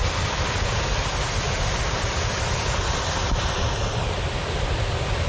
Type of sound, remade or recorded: recorded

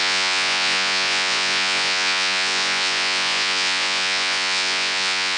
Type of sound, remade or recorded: remade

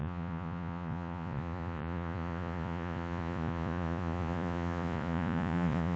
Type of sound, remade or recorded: remade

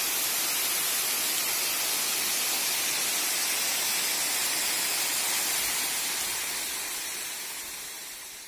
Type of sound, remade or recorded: recorded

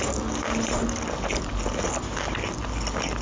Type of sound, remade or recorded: recorded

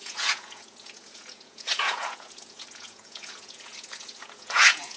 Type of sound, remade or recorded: remade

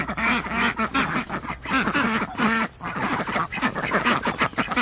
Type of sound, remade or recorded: recorded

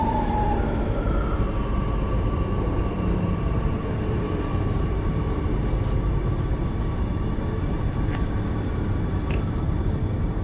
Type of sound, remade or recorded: remade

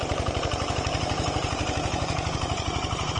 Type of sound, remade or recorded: remade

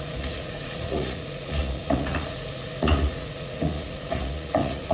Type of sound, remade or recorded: remade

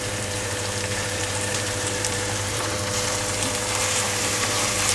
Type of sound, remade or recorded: remade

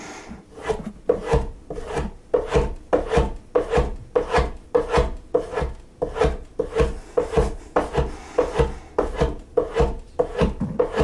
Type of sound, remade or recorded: recorded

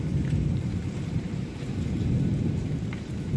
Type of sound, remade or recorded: remade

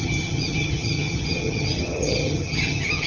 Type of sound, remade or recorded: remade